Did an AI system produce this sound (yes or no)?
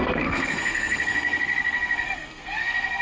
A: yes